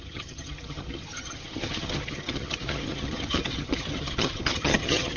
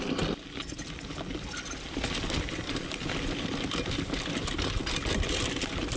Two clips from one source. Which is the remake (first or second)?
first